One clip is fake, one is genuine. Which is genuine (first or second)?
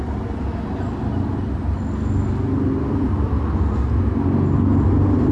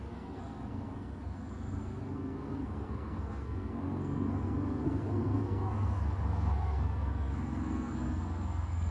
first